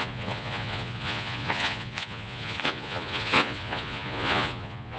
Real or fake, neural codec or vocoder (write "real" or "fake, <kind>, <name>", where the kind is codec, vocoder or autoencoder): fake, vocoder, Vocos